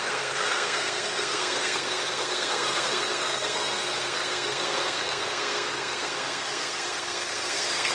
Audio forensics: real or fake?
fake